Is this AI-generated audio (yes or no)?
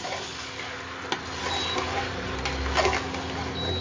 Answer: no